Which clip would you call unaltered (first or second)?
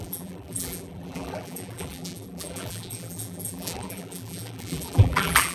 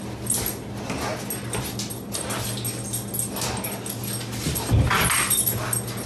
second